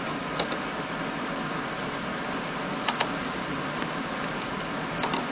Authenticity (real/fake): real